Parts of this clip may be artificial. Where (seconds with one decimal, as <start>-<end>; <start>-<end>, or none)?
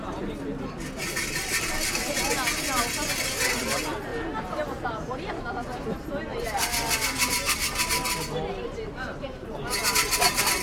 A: none